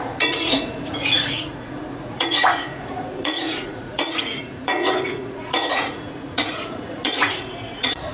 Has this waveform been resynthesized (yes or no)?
yes